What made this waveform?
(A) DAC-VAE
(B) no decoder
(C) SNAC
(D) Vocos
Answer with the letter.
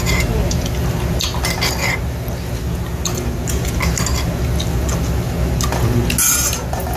B